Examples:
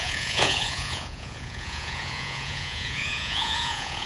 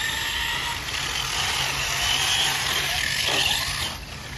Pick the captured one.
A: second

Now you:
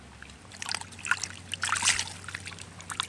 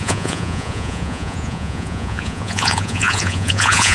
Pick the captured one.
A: first